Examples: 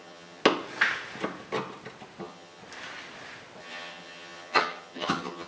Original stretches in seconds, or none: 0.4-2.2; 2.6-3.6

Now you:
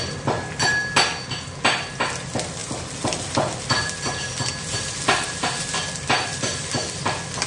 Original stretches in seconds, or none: 0.0-2.6; 6.7-7.5

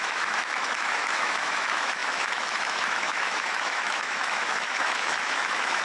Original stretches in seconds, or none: none